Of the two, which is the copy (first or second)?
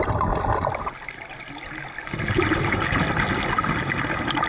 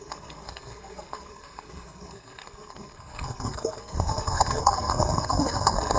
second